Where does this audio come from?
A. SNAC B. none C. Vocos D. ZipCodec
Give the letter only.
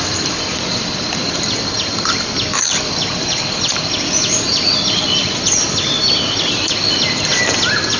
B